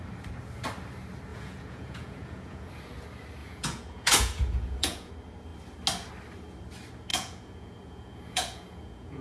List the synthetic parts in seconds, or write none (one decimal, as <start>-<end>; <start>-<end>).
1.3-2.7; 3.4-5.1; 7.1-9.2